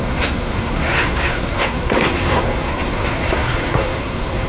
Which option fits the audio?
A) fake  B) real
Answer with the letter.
A